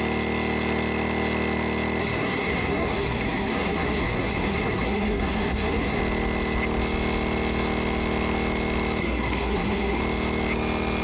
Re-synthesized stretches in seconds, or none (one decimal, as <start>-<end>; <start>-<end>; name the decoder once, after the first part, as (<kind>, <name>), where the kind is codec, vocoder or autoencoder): 2.0-6.0 (codec, SNAC); 9.0-10.0